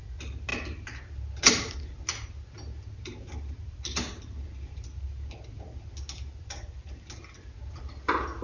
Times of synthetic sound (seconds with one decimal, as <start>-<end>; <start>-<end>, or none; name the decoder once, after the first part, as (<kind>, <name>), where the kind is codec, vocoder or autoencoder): none